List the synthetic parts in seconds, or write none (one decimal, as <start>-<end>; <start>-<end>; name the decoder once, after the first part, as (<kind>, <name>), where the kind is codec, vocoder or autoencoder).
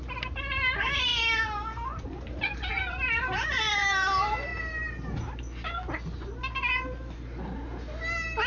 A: 0.0-1.1 (vocoder, BigVGAN v2); 2.1-4.5